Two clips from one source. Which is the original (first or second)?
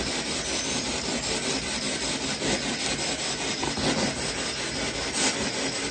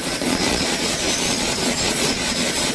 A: first